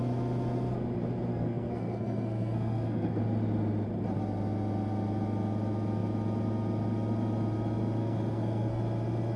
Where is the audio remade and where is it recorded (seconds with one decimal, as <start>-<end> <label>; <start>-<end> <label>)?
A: 0.0-1.3 recorded; 1.3-3.2 remade; 3.2-8.0 recorded; 8.0-8.8 remade; 8.8-9.4 recorded

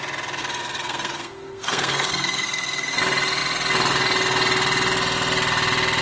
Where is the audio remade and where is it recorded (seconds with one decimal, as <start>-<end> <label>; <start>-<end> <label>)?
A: 0.0-0.4 recorded; 0.4-3.0 remade; 3.0-6.0 recorded

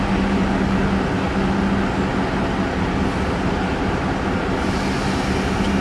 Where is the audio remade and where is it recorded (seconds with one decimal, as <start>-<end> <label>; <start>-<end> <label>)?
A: 0.0-5.8 recorded

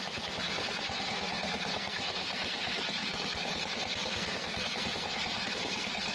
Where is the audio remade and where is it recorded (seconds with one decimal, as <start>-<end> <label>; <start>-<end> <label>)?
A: 0.0-6.1 remade

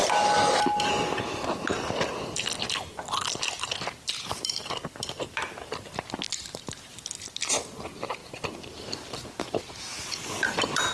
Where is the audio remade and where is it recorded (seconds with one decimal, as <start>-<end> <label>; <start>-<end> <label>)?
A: 0.0-10.9 recorded

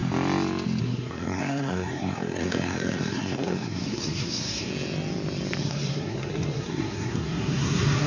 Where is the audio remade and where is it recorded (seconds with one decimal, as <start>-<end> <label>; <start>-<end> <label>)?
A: 0.0-0.8 recorded; 0.8-4.7 remade; 4.7-5.6 recorded; 5.6-8.1 remade